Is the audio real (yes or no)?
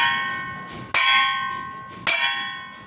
yes